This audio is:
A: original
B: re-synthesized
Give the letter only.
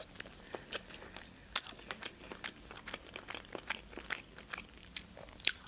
A